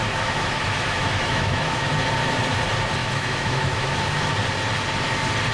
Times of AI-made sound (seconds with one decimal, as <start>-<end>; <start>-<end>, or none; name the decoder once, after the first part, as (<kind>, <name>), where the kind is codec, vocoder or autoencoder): 0.0-1.9 (autoencoder, DAC-VAE); 3.0-4.3

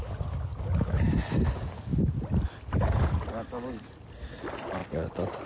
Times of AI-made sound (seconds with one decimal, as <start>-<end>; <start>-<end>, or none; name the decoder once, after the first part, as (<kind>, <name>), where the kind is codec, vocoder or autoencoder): none

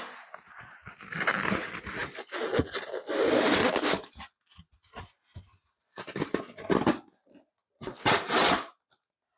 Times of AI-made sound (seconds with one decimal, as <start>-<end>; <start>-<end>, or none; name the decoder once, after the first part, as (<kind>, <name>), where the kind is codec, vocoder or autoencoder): 5.6-6.3 (vocoder, BigVGAN v2); 7.2-8.9

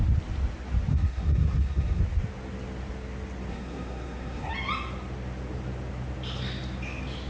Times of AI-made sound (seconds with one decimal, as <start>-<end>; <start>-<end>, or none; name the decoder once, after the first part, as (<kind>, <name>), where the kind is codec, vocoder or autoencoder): 0.9-2.0 (codec, SNAC); 3.5-4.5